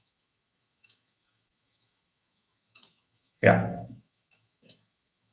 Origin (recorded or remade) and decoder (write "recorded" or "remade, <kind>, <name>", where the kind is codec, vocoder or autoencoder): remade, autoencoder, DAC-VAE